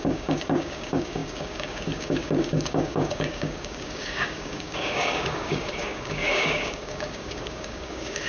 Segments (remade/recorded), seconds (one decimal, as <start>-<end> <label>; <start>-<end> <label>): 0.0-8.3 remade